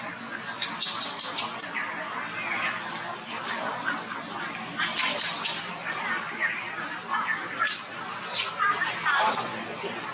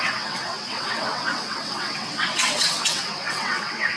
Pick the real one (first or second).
first